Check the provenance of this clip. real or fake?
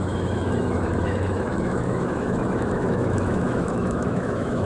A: fake